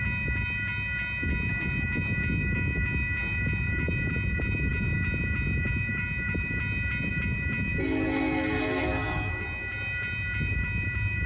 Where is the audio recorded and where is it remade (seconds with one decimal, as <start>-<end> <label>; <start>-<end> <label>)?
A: 0.0-11.3 recorded